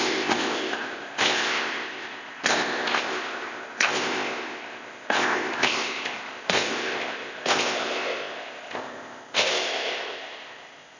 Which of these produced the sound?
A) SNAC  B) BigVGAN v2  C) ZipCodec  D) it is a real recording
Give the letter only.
C